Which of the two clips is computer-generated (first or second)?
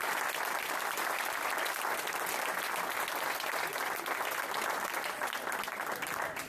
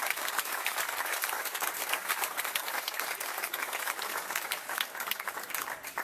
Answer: second